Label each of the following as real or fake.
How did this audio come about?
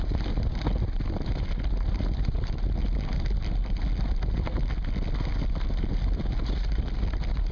real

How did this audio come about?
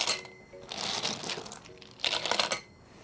real